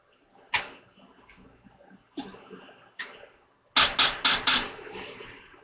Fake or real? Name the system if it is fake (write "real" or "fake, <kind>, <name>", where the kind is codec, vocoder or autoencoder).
real